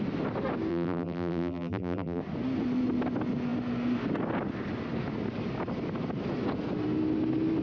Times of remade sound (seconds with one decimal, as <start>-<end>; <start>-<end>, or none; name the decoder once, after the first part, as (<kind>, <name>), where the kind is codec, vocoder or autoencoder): 0.7-2.2 (vocoder, BigVGAN v2)